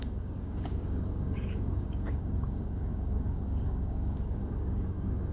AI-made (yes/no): yes